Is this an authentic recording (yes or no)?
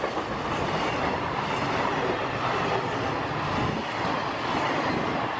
yes